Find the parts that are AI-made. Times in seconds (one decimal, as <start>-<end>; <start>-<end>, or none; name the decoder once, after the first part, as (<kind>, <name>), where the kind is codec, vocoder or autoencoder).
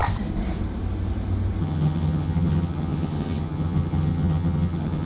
1.6-5.1 (vocoder, HiFi-GAN)